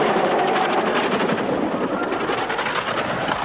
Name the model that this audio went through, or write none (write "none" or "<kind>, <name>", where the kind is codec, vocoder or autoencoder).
none